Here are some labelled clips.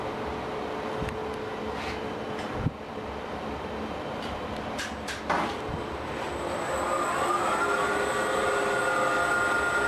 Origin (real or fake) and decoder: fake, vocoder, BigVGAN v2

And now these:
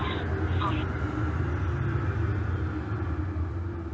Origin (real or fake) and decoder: real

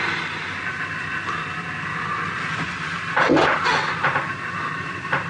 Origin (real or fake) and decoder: real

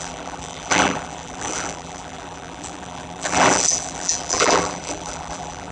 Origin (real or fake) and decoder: fake, vocoder, BigVGAN v2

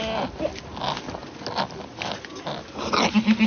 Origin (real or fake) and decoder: real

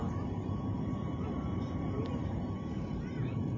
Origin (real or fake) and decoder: fake, vocoder, BigVGAN v2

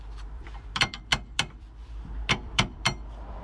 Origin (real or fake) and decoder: fake, vocoder, BigVGAN v2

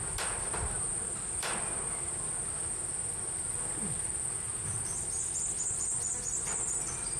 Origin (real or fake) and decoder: real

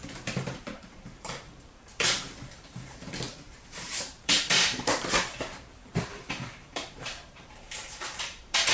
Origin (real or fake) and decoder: fake, vocoder, BigVGAN v2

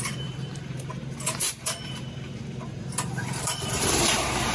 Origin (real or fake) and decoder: fake, vocoder, BigVGAN v2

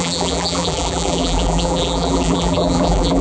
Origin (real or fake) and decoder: fake, vocoder, BigVGAN v2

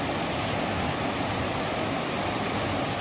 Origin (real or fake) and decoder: real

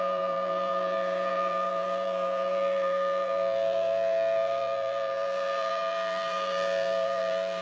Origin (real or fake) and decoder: fake, vocoder, BigVGAN v2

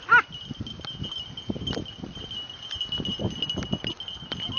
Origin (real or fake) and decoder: real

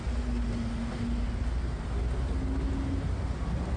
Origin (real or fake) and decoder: real